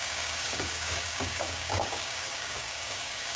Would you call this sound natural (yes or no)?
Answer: no